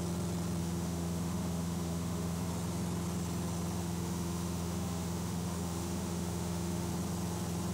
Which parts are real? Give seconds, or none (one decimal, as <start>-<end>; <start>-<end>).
0.0-0.6; 2.5-3.8; 6.9-7.7